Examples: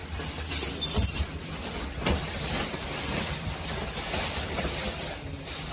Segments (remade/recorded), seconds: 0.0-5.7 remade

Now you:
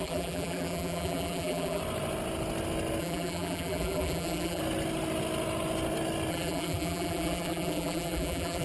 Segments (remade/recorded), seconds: 0.0-1.8 remade; 1.8-3.0 recorded; 3.0-4.6 remade; 4.6-6.3 recorded; 6.3-8.6 remade

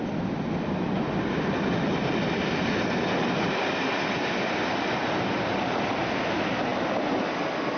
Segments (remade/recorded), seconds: 0.0-7.8 recorded

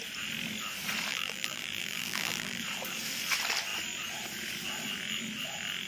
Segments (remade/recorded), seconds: 0.0-1.1 recorded; 1.1-2.6 remade; 2.6-5.9 recorded

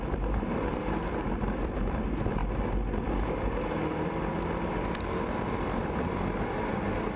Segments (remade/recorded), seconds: 0.0-2.4 remade; 2.4-6.7 recorded; 6.7-7.2 remade

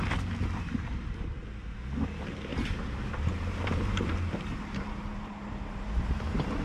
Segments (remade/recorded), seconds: 0.0-2.5 recorded; 2.5-6.6 remade